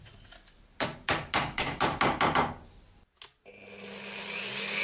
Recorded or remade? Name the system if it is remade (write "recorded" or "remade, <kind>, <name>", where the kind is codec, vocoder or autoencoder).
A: recorded